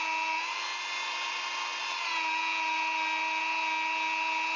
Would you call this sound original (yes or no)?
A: yes